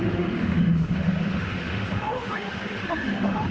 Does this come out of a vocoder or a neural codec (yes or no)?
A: yes